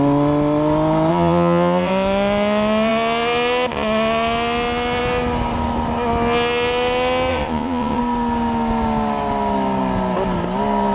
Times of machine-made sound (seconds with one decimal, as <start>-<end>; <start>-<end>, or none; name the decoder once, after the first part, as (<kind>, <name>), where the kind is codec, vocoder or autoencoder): 1.1-1.9 (vocoder, Vocos); 7.3-8.0